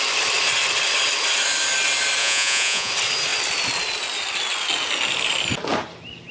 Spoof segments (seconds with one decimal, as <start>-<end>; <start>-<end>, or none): 2.2-2.9